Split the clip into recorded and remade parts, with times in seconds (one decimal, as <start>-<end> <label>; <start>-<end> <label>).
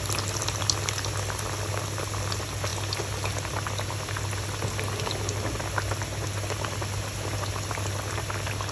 0.0-8.7 recorded